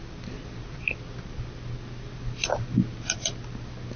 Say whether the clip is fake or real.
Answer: real